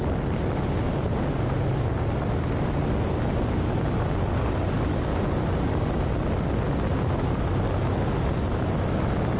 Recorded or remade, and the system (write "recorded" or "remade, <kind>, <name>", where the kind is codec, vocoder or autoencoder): recorded